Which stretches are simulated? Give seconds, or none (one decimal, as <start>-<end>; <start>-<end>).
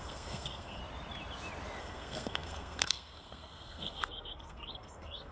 0.0-0.8; 1.8-5.3